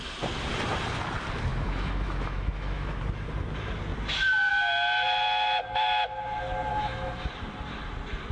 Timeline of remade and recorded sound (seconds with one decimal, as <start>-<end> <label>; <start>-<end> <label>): 0.0-1.5 recorded; 1.5-3.0 remade; 3.0-6.7 recorded; 6.7-7.3 remade; 7.3-8.3 recorded